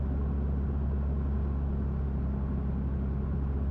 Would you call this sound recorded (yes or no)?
yes